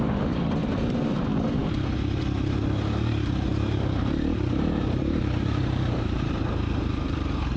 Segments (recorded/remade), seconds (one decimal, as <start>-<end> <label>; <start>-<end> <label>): 0.0-0.6 recorded; 0.6-1.1 remade; 1.1-3.5 recorded; 3.5-7.6 remade